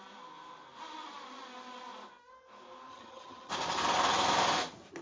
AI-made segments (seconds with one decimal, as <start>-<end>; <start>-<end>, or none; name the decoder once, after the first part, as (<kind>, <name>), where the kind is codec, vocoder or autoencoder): 2.9-3.5 (vocoder, HiFi-GAN)